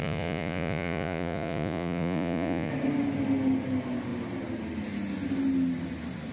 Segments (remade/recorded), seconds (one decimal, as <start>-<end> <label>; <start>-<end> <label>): 0.0-2.7 remade; 2.7-6.3 recorded